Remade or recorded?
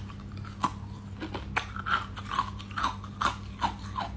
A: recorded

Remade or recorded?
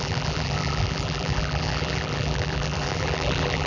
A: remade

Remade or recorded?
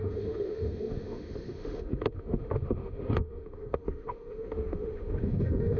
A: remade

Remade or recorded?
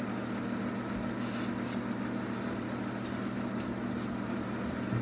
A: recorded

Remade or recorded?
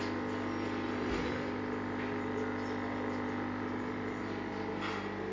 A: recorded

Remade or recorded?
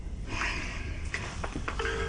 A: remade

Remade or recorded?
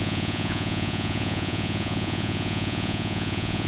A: remade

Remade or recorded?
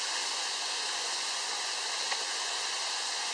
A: remade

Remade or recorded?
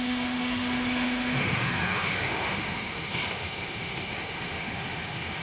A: remade